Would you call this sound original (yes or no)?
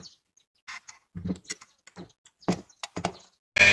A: yes